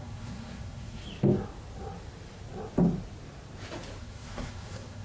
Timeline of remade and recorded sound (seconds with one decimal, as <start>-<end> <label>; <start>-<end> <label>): 0.0-1.0 remade; 1.0-4.0 recorded; 4.0-5.0 remade